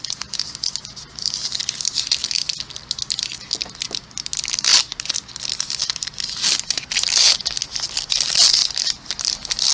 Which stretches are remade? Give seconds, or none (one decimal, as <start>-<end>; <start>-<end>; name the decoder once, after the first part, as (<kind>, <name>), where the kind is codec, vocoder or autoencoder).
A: 8.6-9.1 (vocoder, BigVGAN v2)